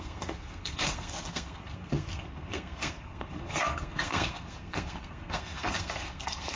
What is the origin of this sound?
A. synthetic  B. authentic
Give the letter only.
A